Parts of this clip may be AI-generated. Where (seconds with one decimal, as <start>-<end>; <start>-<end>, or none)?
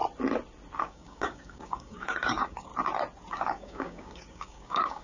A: 0.8-2.7; 3.3-5.0